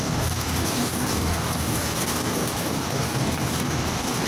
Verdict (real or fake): fake